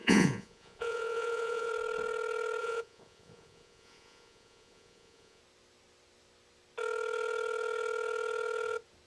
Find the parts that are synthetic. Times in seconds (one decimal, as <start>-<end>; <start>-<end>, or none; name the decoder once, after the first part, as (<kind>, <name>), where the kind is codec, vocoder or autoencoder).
0.0-1.7 (vocoder, Vocos); 2.6-5.4